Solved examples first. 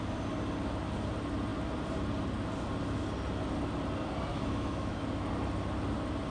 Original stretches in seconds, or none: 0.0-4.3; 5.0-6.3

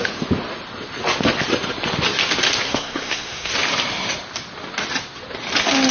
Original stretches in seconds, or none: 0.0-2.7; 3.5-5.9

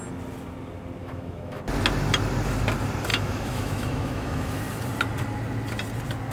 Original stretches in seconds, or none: 0.0-1.0; 1.6-3.1; 4.6-6.3

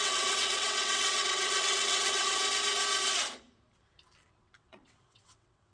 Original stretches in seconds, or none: 2.4-4.3